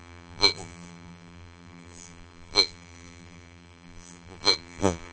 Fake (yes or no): yes